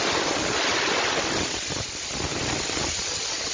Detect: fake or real real